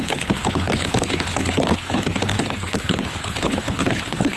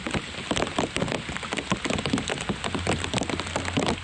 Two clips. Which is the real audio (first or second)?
second